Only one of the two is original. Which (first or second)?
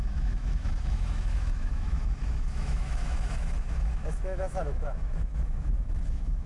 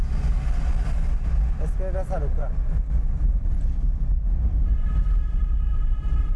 second